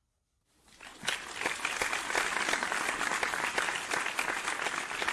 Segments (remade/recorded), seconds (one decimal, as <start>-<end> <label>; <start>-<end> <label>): 0.0-5.1 recorded